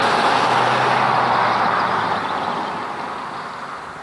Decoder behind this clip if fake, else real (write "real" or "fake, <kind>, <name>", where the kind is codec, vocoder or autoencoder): real